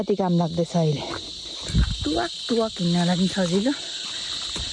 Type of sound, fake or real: real